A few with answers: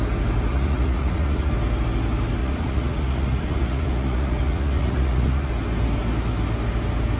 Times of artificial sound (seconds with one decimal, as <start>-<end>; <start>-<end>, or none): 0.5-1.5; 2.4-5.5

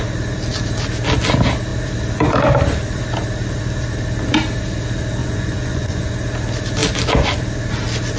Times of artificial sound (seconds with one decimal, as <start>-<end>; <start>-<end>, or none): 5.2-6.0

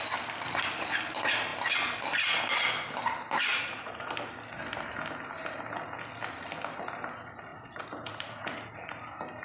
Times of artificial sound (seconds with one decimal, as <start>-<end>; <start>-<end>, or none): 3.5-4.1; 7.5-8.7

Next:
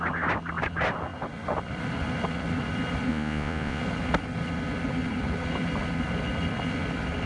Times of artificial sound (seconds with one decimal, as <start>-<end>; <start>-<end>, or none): 3.1-3.8

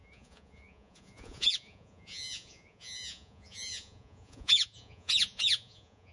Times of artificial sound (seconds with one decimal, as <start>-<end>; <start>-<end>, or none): 0.0-6.1